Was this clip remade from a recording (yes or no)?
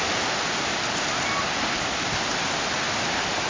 no